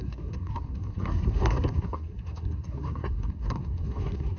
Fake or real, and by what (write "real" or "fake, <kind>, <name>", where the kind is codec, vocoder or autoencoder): fake, codec, SNAC